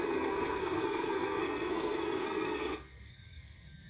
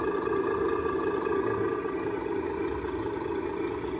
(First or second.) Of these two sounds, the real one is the second